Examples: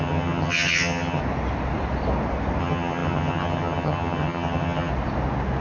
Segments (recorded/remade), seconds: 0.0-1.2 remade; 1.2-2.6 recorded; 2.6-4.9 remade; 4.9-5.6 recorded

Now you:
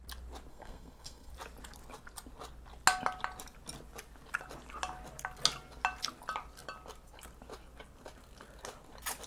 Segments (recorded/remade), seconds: 0.0-0.5 recorded; 0.5-1.3 remade; 1.3-9.3 recorded

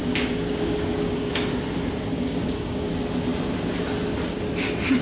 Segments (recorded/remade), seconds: 0.0-1.3 remade; 1.3-2.1 recorded; 2.1-2.9 remade; 2.9-5.0 recorded